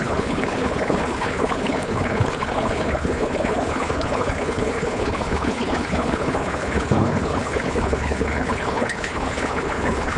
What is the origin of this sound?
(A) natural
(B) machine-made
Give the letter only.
B